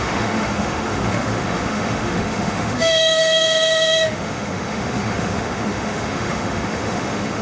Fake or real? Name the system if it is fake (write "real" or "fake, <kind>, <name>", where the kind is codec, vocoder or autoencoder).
fake, autoencoder, DAC-VAE